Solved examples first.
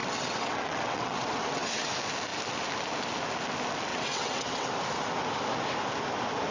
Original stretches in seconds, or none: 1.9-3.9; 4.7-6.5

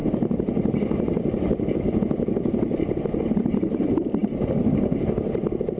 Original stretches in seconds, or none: 0.0-5.8

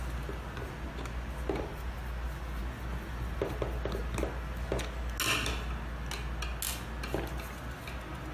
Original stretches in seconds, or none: 0.0-8.3

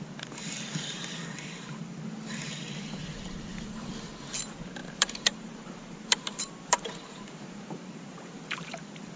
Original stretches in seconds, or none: 0.0-3.5; 4.1-4.8; 8.7-9.2

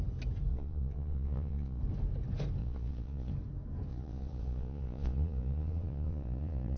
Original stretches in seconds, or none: 0.0-0.5; 1.8-2.6; 3.3-3.9